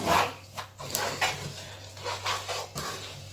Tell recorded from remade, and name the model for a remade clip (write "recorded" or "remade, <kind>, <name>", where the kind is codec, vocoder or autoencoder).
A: recorded